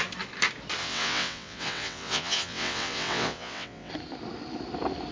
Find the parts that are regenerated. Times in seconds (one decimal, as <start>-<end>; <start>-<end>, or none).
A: 0.8-3.9